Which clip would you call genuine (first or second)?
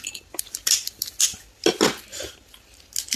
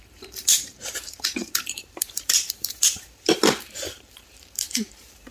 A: first